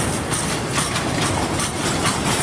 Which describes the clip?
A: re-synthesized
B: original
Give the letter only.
A